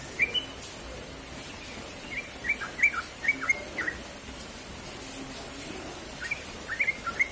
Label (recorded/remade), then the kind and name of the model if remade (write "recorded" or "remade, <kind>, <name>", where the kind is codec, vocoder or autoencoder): recorded